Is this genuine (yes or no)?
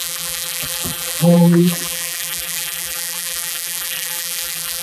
no